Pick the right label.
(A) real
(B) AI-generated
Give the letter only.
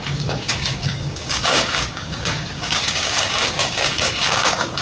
B